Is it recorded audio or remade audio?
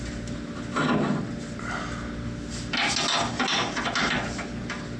recorded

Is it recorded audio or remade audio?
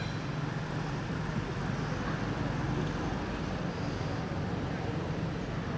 recorded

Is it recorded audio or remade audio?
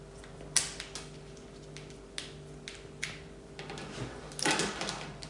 recorded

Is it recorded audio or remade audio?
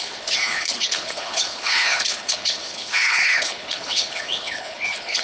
remade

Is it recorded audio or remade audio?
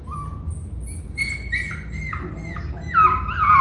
recorded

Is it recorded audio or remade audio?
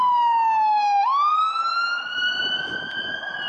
recorded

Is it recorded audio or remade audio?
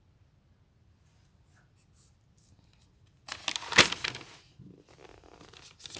recorded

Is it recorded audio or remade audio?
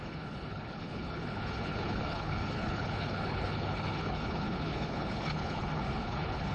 remade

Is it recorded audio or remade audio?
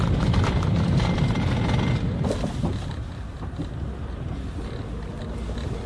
recorded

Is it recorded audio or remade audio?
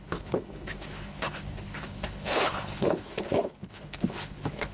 remade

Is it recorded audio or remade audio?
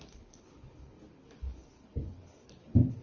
remade